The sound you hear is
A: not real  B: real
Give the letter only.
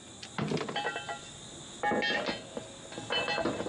B